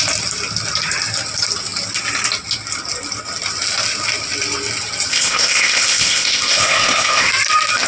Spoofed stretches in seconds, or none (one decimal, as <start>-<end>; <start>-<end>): 5.1-7.3